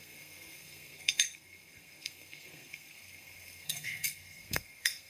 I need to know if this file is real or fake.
fake